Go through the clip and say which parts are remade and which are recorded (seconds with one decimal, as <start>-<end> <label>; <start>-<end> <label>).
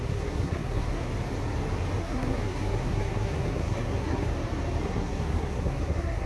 0.0-1.1 remade; 1.1-2.0 recorded; 2.0-4.3 remade; 4.3-4.8 recorded; 4.8-6.3 remade